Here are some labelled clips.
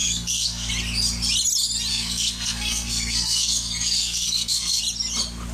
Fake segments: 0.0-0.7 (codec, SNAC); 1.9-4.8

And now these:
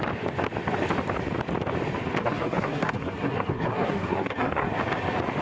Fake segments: 2.2-4.7 (codec, SNAC)

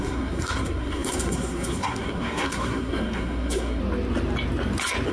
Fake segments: 0.0-3.8 (codec, SNAC)